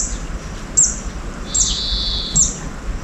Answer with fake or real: real